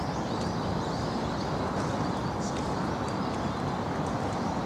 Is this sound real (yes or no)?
yes